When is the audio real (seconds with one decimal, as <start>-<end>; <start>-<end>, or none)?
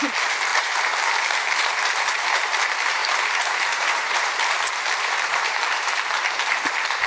none